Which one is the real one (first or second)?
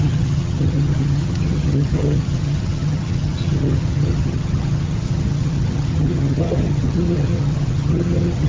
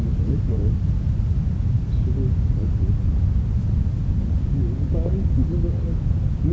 second